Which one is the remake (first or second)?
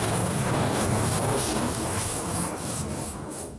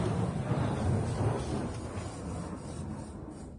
first